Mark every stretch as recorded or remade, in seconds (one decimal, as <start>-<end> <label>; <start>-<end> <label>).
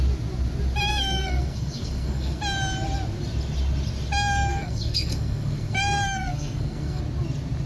0.0-0.9 recorded; 0.9-2.4 remade; 2.4-4.5 recorded; 4.5-7.0 remade; 7.0-7.7 recorded